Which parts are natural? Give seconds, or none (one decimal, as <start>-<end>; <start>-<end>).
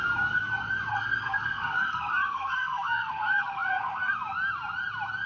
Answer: 0.0-0.9; 4.1-5.3